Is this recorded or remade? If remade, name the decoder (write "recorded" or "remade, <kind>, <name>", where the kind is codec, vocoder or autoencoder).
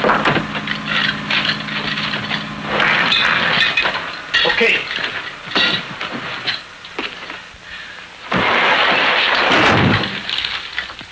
recorded